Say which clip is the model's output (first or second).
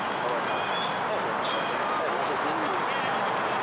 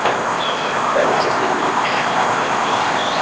second